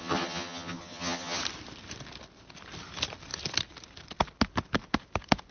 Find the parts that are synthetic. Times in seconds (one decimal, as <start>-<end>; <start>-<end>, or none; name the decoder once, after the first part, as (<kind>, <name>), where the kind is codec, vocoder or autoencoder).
0.0-1.4 (vocoder, HiFi-GAN)

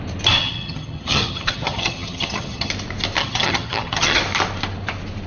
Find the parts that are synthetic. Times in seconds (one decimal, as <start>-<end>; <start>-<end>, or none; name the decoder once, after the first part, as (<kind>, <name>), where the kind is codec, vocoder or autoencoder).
0.4-2.7 (vocoder, HiFi-GAN); 3.2-4.2

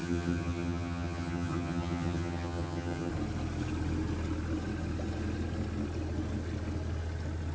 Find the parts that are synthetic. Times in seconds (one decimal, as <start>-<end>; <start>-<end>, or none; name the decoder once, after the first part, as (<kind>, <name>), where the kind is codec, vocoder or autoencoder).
0.0-3.1 (vocoder, HiFi-GAN)